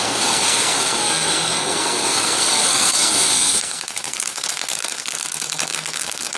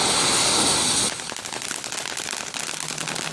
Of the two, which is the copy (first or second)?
first